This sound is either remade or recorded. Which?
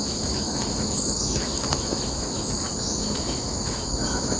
remade